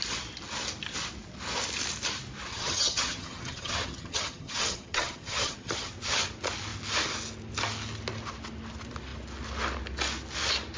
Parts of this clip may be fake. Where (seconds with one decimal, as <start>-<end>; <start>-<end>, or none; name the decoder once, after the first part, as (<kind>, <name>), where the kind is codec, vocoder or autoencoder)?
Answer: 2.5-5.9 (vocoder, HiFi-GAN)